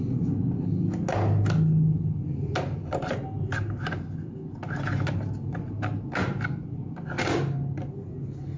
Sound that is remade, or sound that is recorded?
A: recorded